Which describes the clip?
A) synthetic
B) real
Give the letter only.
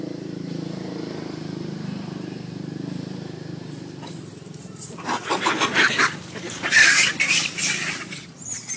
A